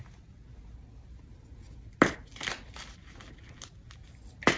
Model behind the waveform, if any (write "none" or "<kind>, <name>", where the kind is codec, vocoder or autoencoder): none